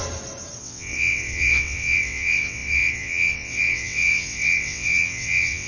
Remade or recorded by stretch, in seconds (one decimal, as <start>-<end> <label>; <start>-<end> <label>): 0.0-0.6 recorded; 0.6-5.7 remade